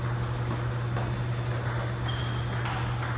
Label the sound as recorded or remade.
recorded